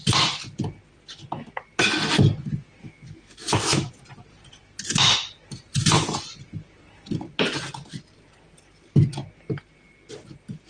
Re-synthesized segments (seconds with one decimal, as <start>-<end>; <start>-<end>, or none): 2.8-3.9